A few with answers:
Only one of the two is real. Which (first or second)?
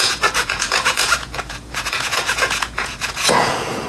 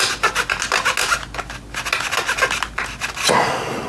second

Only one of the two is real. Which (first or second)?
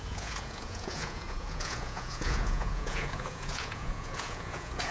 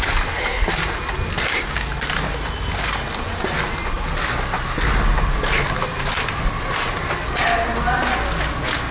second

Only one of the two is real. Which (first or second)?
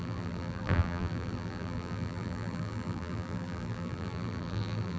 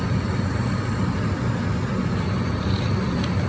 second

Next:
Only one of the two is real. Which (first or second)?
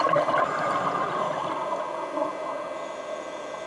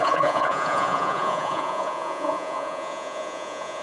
first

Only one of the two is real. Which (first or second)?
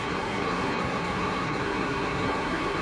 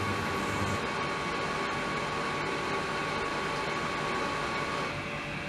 second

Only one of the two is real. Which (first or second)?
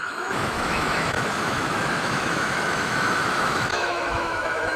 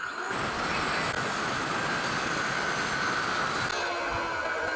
second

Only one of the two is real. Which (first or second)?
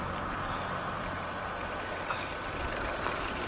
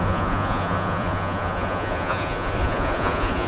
first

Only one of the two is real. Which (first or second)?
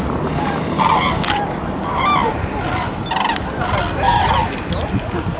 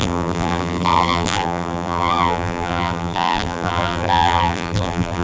first